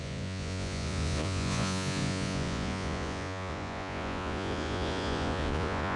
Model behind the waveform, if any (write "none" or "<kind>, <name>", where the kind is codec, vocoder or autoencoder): vocoder, Vocos